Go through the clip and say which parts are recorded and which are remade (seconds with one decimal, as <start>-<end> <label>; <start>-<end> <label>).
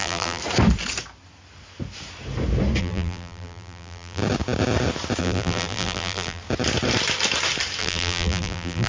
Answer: 0.0-0.4 remade; 0.4-2.8 recorded; 2.8-4.2 remade; 4.2-5.2 recorded; 5.2-6.4 remade; 6.4-7.8 recorded; 7.8-8.9 remade